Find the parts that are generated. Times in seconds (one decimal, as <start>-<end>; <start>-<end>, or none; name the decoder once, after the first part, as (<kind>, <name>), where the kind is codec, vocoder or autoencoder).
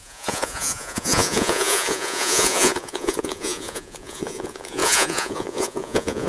0.0-6.3 (vocoder, Vocos)